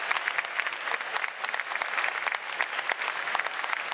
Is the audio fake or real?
real